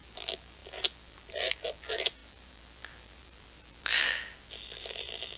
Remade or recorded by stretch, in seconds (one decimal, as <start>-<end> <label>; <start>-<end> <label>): 0.0-5.4 remade